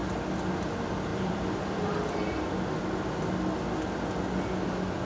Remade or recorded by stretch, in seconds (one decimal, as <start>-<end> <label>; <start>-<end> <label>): 0.0-0.5 remade; 0.5-1.1 recorded; 1.1-2.4 remade; 2.4-5.0 recorded